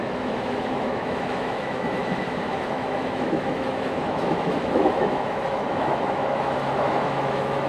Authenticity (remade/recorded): remade